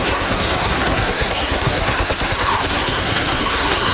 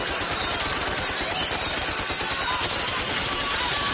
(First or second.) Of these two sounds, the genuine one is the second